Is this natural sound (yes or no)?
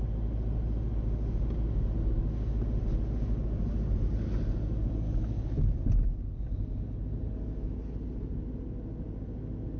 yes